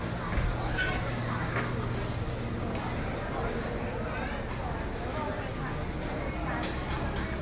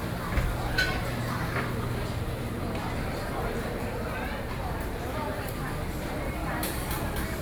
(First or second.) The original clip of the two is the first